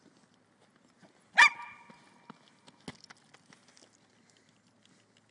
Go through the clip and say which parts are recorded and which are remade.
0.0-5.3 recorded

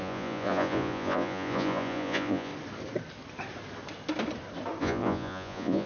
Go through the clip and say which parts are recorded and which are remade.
0.0-2.5 remade; 2.5-4.8 recorded; 4.8-5.9 remade

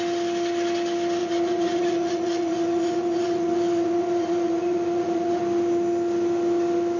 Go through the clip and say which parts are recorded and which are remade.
0.0-1.2 recorded; 1.2-5.4 remade; 5.4-7.0 recorded

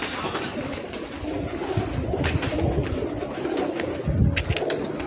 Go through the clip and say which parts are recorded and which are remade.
0.0-5.1 recorded

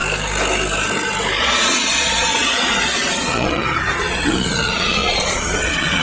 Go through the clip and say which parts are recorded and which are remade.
0.0-1.4 recorded; 1.4-6.0 remade